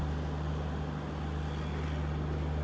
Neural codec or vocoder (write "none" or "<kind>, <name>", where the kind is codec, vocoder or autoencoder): none